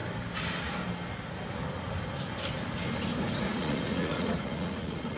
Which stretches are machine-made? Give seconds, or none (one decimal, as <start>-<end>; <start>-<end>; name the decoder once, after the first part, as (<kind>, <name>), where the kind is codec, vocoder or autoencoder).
3.5-5.2 (vocoder, Vocos)